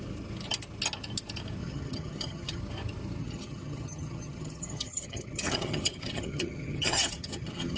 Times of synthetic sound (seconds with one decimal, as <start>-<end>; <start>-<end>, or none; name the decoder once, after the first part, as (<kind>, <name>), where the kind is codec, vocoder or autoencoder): 1.6-2.6 (vocoder, HiFi-GAN); 3.2-7.8